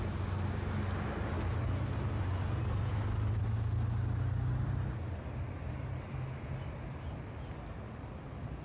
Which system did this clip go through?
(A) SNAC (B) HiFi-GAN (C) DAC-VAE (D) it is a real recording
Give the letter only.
D